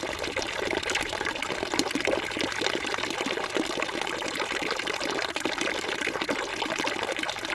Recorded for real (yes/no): no